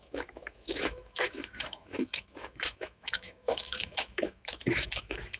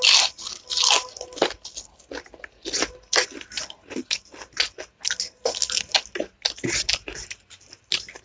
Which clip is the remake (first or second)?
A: first